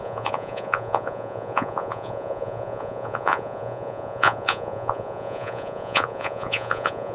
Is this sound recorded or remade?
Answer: remade